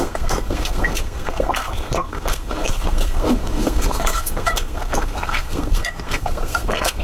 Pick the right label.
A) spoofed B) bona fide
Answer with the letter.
A